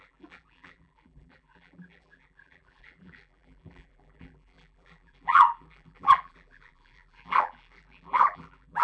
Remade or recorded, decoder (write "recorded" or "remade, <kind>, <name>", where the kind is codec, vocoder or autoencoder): remade, vocoder, BigVGAN v2